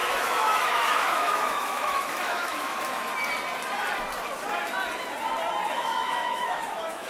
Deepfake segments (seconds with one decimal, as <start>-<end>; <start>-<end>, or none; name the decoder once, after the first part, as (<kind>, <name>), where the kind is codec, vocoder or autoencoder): 0.0-3.1 (autoencoder, DAC-VAE); 5.7-7.1